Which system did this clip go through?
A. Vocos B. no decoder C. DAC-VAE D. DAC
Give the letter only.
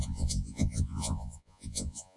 A